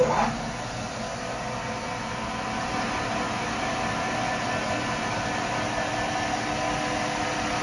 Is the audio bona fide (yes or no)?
yes